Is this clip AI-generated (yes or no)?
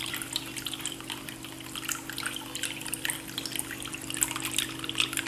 no